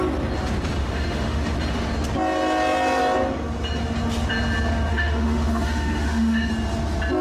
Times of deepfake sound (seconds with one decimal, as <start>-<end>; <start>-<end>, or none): 0.8-1.5; 4.9-6.5